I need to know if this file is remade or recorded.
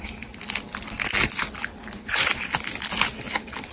recorded